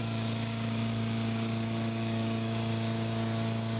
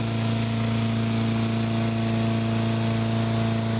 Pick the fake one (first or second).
first